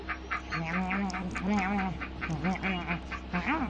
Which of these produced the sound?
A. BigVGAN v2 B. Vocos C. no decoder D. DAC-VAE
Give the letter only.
C